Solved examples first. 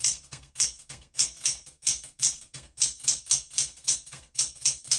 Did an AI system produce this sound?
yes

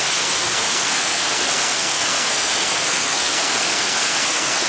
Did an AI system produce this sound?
yes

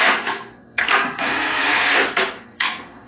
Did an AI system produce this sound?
yes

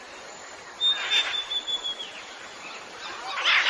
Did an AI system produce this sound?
no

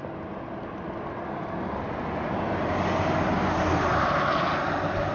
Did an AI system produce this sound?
no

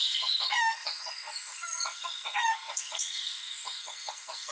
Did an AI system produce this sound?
yes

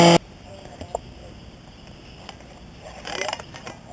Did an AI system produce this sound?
no